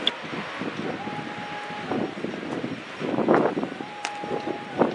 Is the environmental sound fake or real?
real